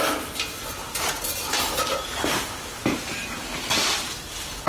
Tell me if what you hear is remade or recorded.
recorded